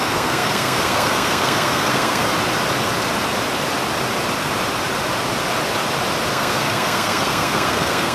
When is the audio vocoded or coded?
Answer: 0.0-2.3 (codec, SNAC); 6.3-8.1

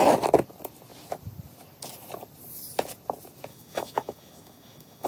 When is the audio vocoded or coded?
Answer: 3.5-5.1 (autoencoder, DAC-VAE)

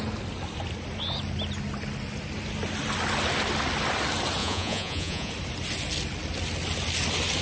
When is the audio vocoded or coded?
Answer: 4.4-5.3 (vocoder, Vocos)

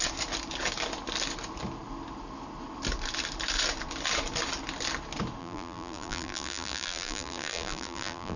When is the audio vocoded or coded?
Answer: 5.4-8.4 (vocoder, BigVGAN v2)

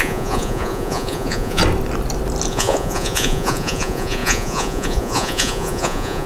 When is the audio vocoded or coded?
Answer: 0.0-1.6 (vocoder, Vocos); 2.5-6.3

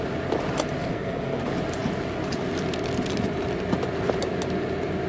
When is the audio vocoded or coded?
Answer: 0.8-1.4 (codec, SNAC)

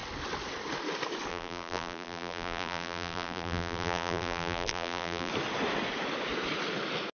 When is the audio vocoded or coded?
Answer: 1.3-5.3 (vocoder, BigVGAN v2)

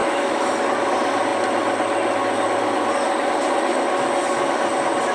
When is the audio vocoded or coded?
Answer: 0.0-0.6 (autoencoder, DAC-VAE)